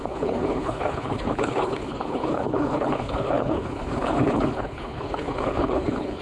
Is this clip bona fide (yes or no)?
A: no